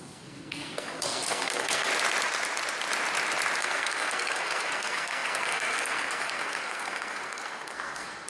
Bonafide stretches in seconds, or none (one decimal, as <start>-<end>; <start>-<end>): 1.9-3.6